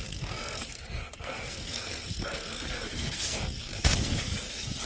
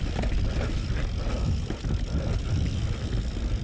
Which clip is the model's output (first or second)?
first